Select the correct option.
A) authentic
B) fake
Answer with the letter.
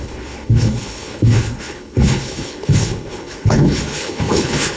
B